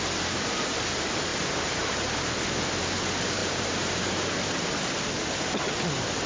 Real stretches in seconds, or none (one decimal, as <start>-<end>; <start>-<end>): 0.0-1.3; 2.2-3.4; 4.7-6.3